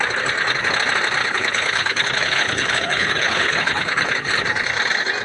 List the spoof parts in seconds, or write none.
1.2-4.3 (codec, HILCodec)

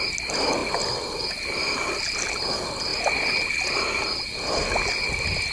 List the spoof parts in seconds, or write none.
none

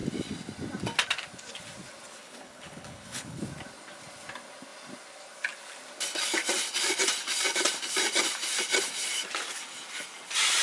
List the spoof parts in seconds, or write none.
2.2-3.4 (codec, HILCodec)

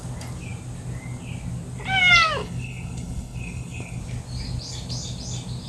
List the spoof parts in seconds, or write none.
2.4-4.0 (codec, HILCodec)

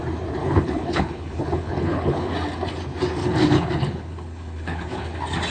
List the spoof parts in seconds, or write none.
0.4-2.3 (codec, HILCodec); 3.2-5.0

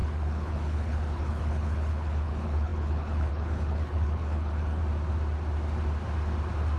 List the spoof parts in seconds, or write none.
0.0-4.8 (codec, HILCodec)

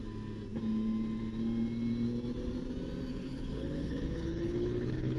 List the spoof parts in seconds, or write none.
3.1-5.2 (codec, HILCodec)

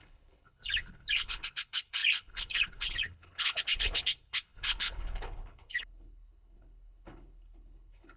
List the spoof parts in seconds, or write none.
0.0-8.2 (codec, HILCodec)